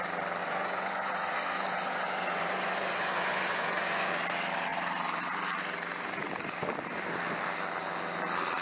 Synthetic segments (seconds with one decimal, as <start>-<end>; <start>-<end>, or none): 0.4-4.1